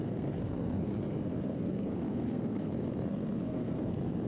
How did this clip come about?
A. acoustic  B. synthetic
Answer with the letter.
B